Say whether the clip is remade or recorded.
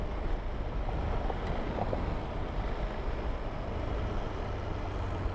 recorded